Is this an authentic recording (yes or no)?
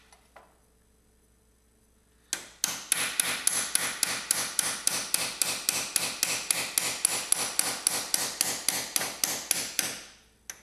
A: yes